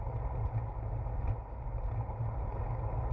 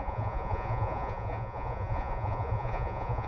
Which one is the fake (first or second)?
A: second